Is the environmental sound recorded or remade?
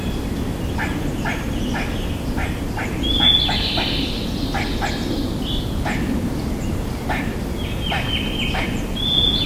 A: recorded